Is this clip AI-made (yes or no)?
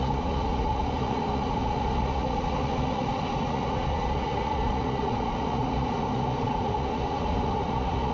yes